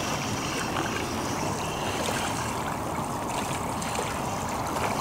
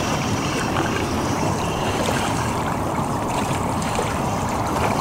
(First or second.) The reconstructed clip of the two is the second